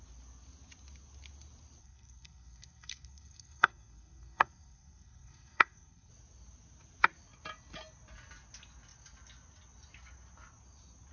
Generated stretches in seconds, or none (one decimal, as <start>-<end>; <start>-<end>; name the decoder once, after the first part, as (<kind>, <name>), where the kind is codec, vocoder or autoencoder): 1.8-6.1 (codec, SNAC)